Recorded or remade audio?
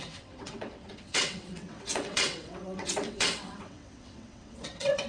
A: remade